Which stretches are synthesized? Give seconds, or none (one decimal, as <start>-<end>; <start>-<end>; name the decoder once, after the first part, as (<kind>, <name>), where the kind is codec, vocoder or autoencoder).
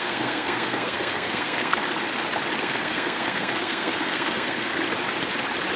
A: 0.0-1.8 (codec, SNAC); 2.6-4.7